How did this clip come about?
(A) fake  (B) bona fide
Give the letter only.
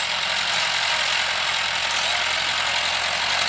B